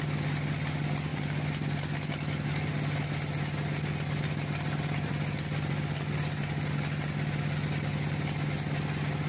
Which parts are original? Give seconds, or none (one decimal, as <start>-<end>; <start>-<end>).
0.0-9.3